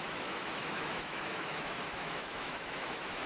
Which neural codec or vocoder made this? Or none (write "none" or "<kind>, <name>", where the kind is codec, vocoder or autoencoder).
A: autoencoder, DAC-VAE